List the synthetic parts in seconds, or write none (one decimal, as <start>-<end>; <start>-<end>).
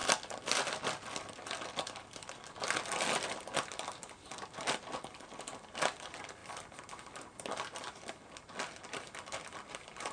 none